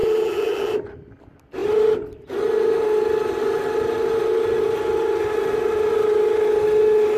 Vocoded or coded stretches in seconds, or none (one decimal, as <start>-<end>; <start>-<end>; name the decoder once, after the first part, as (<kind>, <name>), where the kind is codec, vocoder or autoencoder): 0.0-0.7 (vocoder, BigVGAN v2)